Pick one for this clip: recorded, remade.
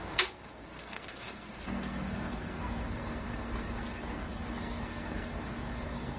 remade